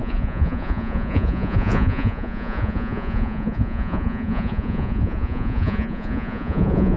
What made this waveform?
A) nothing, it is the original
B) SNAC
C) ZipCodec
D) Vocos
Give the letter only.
D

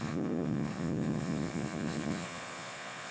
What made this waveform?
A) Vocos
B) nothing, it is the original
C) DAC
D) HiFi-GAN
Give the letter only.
A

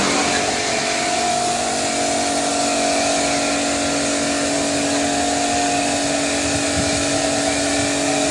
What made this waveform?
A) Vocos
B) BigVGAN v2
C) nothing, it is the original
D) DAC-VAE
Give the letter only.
C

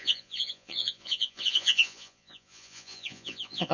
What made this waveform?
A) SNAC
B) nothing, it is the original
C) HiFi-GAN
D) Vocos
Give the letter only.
D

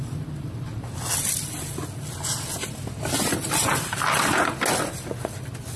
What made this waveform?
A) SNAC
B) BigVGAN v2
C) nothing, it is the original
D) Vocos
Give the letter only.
C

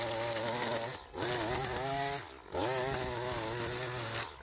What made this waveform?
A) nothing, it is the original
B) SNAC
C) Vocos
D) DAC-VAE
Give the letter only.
A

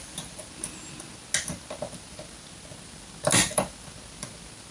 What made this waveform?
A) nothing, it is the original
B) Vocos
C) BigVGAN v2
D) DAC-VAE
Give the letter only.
A